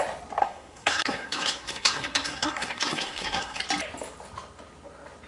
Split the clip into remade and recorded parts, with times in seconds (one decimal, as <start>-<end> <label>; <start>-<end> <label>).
0.0-0.4 recorded; 0.4-3.6 remade; 3.6-5.3 recorded